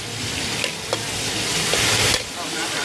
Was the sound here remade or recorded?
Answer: recorded